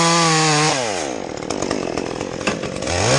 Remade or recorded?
recorded